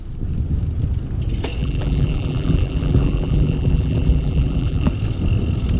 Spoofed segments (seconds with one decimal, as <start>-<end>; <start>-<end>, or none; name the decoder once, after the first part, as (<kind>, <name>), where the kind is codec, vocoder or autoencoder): 1.6-4.9 (vocoder, BigVGAN v2)